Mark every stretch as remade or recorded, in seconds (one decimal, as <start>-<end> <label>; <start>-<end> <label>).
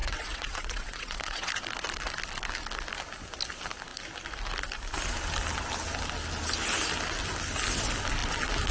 0.0-1.5 remade; 1.5-8.7 recorded